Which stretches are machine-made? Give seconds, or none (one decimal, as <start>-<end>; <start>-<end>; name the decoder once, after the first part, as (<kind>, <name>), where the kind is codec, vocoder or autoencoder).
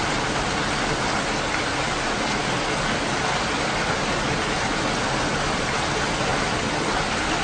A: none